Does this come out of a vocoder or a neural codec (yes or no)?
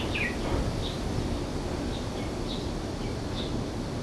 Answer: no